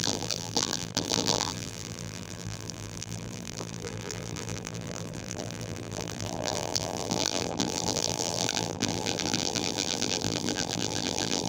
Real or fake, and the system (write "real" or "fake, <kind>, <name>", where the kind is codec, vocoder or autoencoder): fake, vocoder, BigVGAN v2